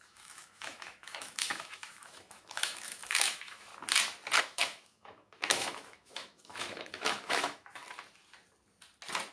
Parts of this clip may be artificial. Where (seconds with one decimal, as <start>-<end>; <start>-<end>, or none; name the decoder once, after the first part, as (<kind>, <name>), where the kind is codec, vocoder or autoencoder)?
0.0-3.7 (autoencoder, DAC-VAE); 4.4-7.8